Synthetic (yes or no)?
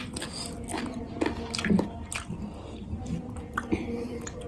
no